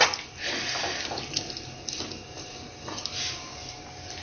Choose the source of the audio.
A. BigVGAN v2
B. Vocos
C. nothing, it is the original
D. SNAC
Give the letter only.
C